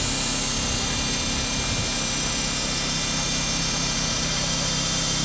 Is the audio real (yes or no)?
yes